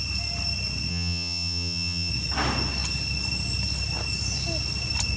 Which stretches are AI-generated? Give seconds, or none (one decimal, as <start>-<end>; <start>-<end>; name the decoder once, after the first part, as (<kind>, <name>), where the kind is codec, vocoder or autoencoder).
0.9-2.1 (vocoder, HiFi-GAN)